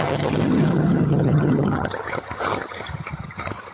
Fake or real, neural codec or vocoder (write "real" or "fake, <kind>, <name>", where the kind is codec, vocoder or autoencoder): fake, vocoder, HiFi-GAN